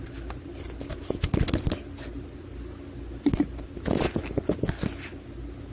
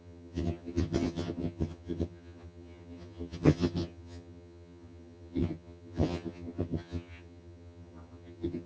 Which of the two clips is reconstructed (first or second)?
second